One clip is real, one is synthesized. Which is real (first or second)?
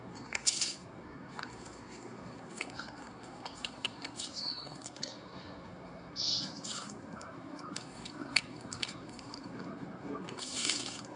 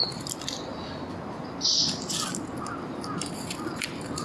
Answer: second